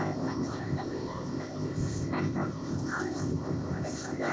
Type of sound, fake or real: fake